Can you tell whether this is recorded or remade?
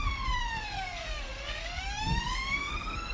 remade